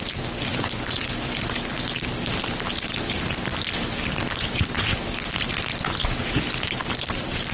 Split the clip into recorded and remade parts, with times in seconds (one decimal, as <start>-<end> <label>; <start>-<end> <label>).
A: 0.0-7.5 remade